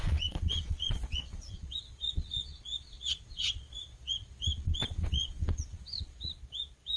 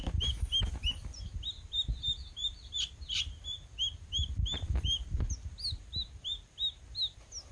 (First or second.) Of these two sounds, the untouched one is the second